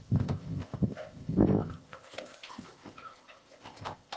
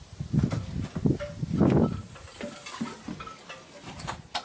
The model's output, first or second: first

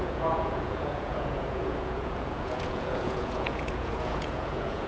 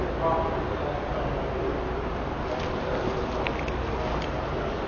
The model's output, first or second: first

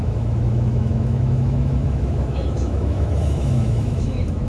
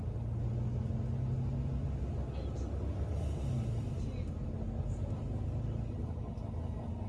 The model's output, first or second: first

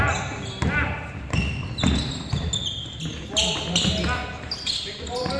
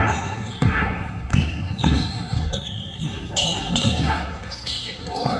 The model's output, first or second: second